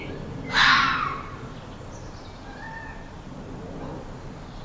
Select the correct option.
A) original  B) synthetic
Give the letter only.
A